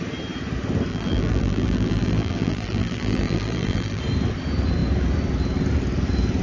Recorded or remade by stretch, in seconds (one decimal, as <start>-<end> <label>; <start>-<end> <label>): 0.0-0.9 recorded; 0.9-4.0 remade; 4.0-6.4 recorded